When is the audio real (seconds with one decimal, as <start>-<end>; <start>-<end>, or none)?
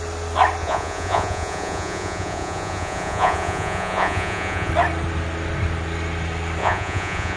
0.0-0.6; 4.7-6.6